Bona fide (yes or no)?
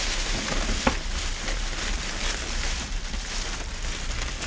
yes